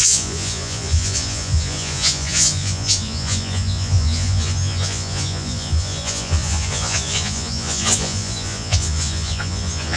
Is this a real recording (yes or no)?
no